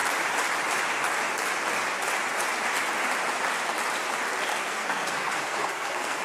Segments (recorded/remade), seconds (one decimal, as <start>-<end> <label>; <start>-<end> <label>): 0.0-4.5 recorded; 4.5-6.2 remade